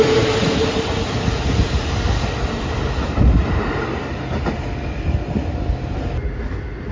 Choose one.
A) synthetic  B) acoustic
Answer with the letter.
B